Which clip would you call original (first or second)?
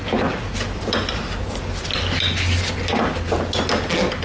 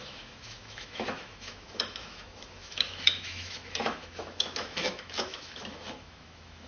first